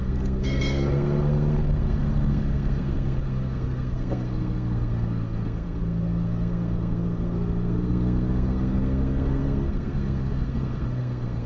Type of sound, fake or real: fake